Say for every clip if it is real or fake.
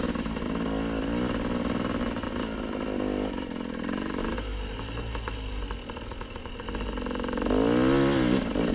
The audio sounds real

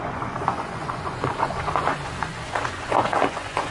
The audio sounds fake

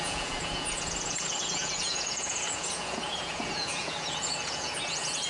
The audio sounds fake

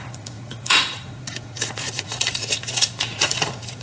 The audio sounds fake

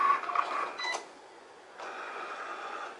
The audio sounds fake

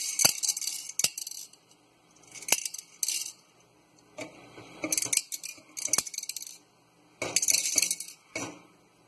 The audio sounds real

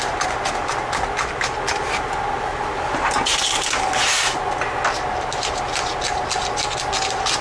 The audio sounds real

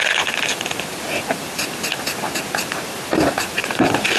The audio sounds real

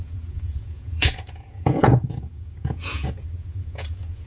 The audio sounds fake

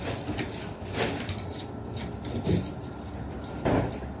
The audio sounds real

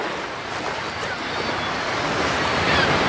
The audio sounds real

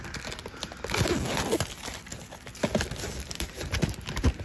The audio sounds real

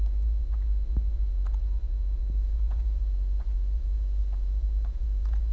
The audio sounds fake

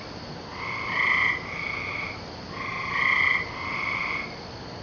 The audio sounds real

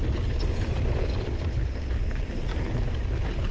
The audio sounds real